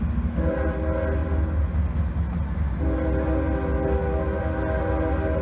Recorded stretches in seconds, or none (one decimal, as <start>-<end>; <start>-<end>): 0.0-5.4

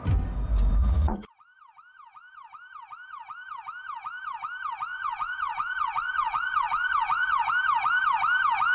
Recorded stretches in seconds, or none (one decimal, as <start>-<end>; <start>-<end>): 0.0-0.8; 1.3-4.9; 7.5-8.7